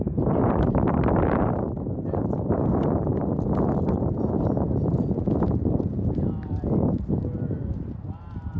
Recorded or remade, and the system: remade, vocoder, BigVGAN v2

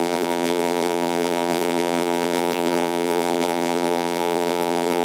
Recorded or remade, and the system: remade, vocoder, BigVGAN v2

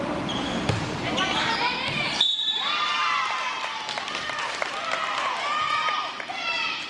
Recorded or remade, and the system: remade, vocoder, BigVGAN v2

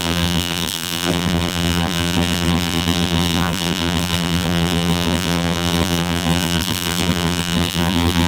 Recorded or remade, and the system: remade, vocoder, BigVGAN v2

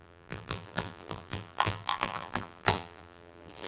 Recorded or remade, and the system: remade, vocoder, BigVGAN v2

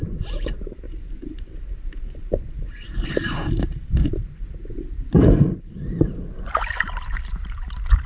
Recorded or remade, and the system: remade, vocoder, BigVGAN v2